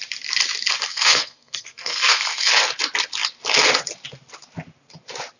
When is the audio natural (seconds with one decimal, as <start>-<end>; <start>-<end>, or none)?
0.0-0.9; 2.6-5.4